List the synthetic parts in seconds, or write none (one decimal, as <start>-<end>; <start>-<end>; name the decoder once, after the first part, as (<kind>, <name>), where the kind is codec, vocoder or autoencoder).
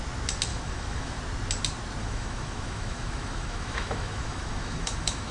0.5-1.2 (autoencoder, DAC-VAE); 2.0-5.3